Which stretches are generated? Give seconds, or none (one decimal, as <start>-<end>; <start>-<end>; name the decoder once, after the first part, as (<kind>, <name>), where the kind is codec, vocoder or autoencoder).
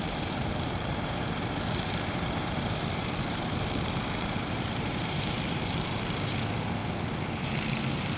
0.0-6.8 (vocoder, BigVGAN v2); 7.4-8.2